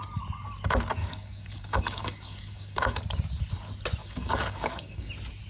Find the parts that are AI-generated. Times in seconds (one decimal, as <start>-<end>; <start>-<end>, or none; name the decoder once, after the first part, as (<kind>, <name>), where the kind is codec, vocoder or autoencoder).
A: 1.0-3.0 (codec, DAC); 4.0-5.1